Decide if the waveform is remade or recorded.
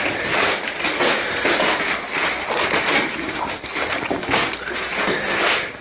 recorded